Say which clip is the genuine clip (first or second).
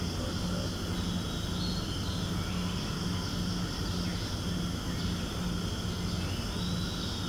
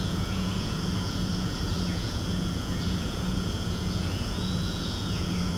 first